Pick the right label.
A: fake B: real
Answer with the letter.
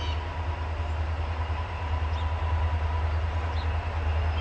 B